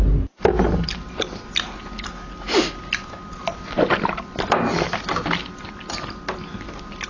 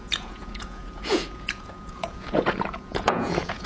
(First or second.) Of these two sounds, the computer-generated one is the second